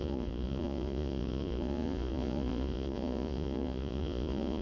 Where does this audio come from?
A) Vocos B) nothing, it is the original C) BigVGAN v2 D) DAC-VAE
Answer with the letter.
A